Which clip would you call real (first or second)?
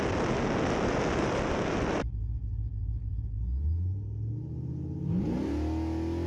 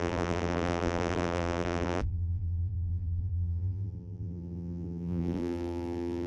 first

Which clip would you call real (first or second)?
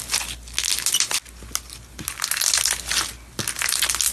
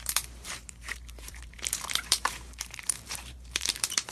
first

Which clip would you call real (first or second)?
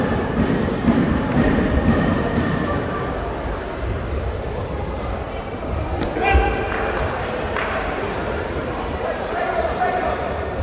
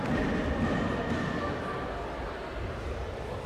second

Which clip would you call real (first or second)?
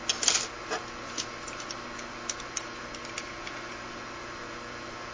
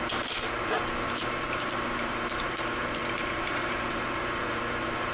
first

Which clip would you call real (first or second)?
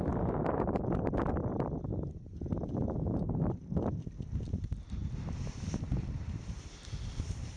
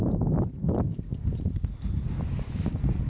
second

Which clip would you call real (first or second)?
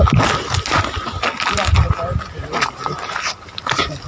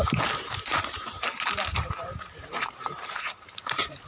first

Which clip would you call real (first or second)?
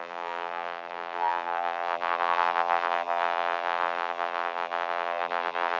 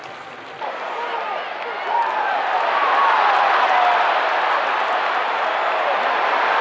second